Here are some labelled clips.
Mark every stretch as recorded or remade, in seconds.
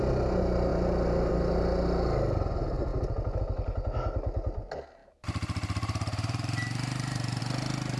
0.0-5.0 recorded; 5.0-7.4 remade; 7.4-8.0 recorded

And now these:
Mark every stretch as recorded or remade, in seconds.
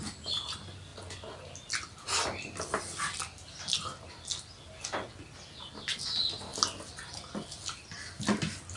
0.0-8.8 recorded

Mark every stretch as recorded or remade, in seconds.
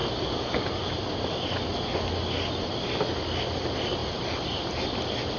0.0-4.0 recorded; 4.0-4.5 remade; 4.5-5.4 recorded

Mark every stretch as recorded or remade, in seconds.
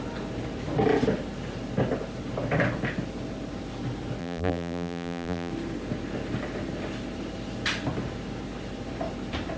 0.0-4.2 recorded; 4.2-5.5 remade; 5.5-9.6 recorded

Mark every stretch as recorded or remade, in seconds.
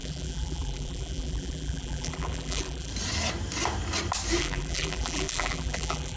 0.0-2.9 remade; 2.9-4.4 recorded; 4.4-6.2 remade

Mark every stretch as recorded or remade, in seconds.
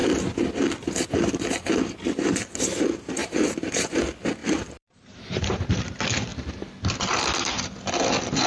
0.0-3.2 recorded; 3.2-4.0 remade; 4.0-4.4 recorded; 4.4-5.5 remade; 5.5-6.3 recorded; 6.3-7.5 remade; 7.5-8.5 recorded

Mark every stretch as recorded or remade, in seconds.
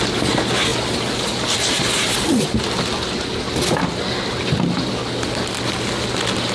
0.0-6.5 recorded